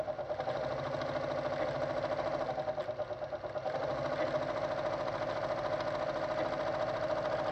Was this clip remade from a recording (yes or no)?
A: no